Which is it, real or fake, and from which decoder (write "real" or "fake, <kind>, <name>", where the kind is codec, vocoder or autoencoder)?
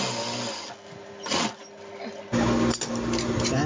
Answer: real